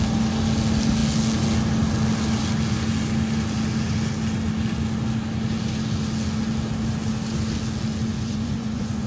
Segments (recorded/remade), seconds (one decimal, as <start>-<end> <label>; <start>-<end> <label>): 0.0-8.1 recorded; 8.1-9.1 remade